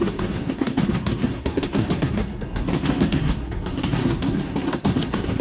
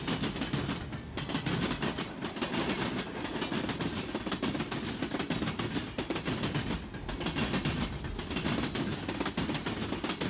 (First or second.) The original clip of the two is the second